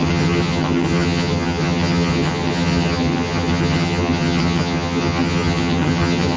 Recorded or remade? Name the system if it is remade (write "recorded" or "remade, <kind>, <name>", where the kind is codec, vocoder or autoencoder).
remade, vocoder, HiFi-GAN